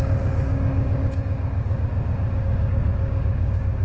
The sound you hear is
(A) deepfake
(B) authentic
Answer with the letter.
A